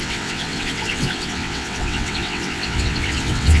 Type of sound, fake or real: fake